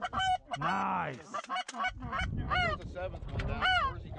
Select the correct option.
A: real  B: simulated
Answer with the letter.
A